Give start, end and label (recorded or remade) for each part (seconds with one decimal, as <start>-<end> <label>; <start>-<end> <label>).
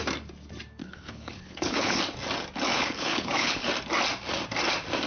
0.0-0.8 recorded; 0.8-2.0 remade; 2.0-2.7 recorded; 2.7-3.7 remade; 3.7-5.1 recorded